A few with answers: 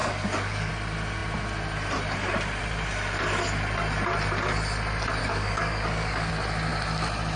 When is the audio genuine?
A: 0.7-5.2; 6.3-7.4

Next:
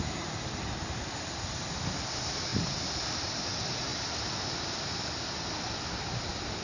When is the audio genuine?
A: 0.0-2.5; 3.1-3.9; 5.3-6.6